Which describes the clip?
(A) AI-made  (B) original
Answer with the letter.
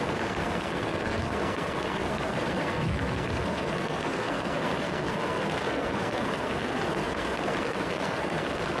A